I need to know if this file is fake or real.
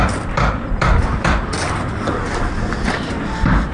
fake